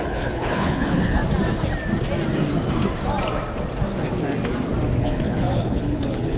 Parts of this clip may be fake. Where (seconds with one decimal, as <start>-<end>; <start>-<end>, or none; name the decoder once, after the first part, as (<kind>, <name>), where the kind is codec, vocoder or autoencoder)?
0.0-1.2 (codec, HILCodec); 5.0-6.4